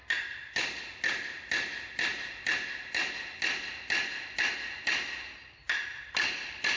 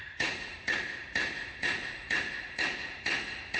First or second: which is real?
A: first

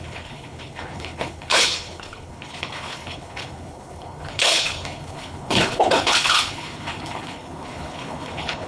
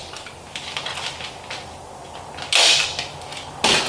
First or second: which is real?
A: second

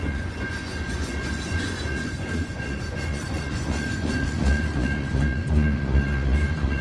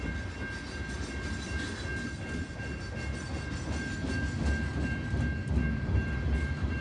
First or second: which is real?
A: second